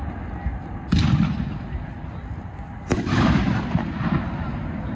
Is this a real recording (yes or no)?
yes